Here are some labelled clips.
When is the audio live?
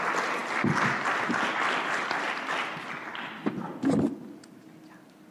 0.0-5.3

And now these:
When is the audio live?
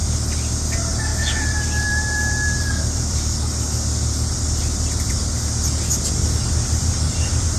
0.0-1.1; 5.3-7.6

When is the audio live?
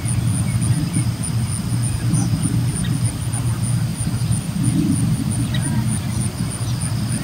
0.0-7.2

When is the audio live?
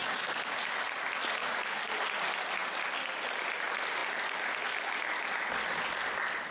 0.6-1.4; 1.9-6.5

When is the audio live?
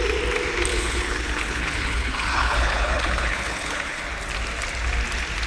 0.0-0.7; 4.0-5.5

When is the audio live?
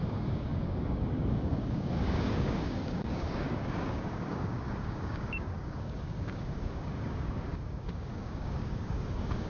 none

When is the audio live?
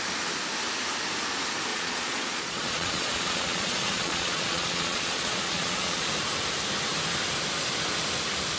0.0-1.7; 6.1-8.6